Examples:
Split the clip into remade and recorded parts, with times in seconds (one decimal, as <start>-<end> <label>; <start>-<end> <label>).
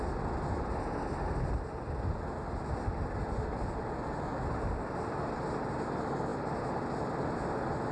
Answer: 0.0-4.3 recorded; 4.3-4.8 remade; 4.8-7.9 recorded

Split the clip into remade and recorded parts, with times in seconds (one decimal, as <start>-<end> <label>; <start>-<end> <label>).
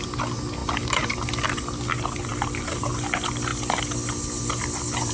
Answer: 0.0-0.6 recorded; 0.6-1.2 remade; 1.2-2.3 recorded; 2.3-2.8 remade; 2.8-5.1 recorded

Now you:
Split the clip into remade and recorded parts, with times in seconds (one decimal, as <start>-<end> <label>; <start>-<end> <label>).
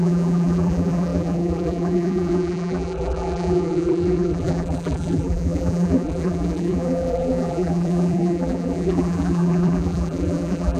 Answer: 0.0-10.8 remade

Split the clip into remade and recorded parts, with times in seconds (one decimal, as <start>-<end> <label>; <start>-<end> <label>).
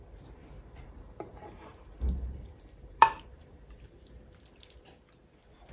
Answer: 0.0-0.4 recorded; 0.4-3.8 remade; 3.8-5.7 recorded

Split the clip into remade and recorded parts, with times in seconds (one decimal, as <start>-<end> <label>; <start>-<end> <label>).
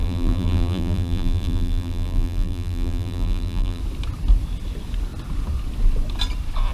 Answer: 0.0-3.8 remade; 3.8-6.7 recorded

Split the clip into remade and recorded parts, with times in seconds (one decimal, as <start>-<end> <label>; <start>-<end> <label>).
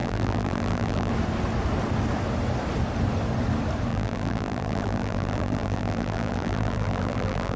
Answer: 0.0-1.1 remade; 1.1-3.9 recorded; 3.9-7.6 remade